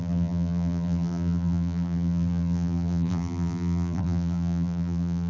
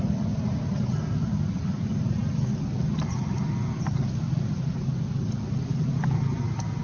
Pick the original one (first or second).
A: second